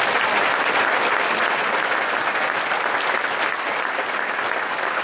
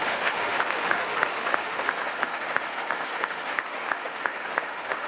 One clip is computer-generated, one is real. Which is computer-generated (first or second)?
second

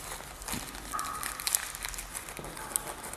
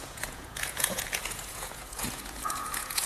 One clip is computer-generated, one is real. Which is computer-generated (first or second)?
second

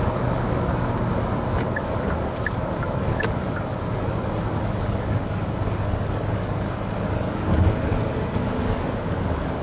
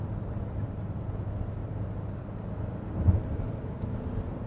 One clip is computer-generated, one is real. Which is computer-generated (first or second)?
first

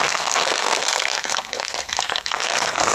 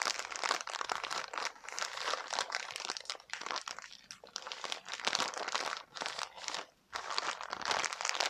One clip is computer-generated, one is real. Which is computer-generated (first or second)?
first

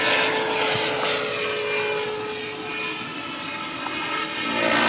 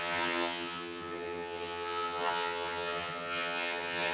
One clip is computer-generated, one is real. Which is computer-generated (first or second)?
second